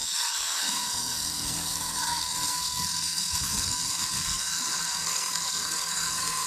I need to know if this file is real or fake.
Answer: fake